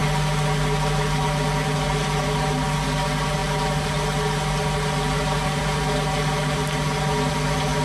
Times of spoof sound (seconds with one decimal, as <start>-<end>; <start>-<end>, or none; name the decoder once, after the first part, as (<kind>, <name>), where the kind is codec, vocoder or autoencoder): none